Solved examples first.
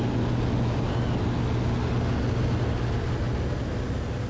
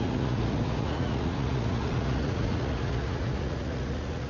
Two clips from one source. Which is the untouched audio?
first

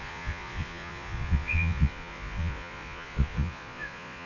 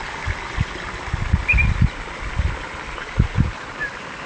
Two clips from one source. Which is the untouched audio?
second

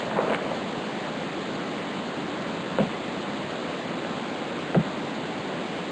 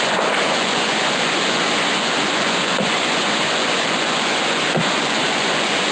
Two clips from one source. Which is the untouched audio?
first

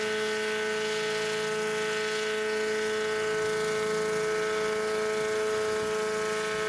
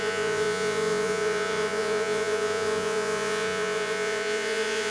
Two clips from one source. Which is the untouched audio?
first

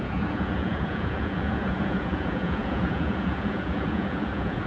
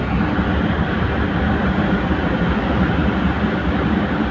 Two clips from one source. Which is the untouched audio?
second